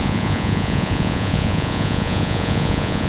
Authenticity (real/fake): fake